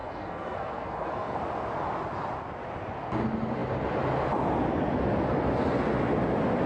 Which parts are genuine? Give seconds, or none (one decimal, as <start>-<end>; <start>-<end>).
1.4-6.7